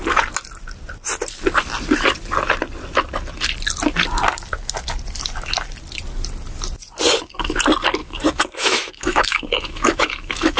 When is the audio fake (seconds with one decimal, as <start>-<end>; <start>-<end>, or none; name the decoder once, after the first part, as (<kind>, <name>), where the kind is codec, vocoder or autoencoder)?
8.0-10.6 (autoencoder, DAC-VAE)

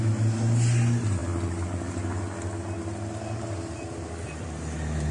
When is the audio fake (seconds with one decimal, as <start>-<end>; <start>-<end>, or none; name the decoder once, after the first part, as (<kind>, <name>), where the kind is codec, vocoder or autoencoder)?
none

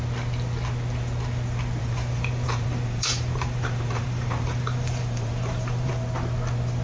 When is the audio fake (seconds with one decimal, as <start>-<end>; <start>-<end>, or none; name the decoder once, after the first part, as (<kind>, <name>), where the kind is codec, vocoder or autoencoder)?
1.8-5.9 (vocoder, BigVGAN v2)